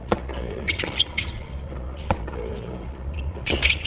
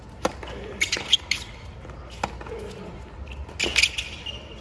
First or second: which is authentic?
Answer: second